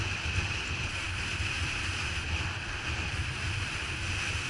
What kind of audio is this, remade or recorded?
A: recorded